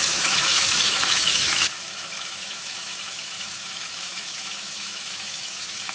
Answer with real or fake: fake